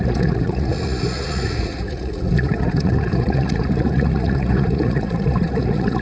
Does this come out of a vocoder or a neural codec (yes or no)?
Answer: yes